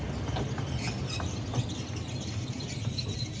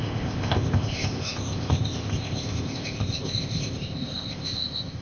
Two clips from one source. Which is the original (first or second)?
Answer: first